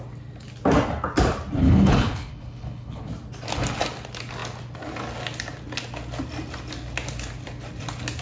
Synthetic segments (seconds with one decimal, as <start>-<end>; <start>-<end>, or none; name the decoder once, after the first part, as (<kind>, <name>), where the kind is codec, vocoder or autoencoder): 1.6-3.1 (codec, HILCodec)